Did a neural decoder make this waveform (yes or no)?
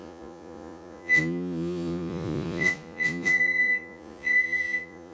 yes